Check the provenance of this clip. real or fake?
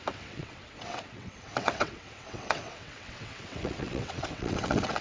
fake